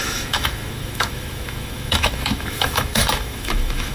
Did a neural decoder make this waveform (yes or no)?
yes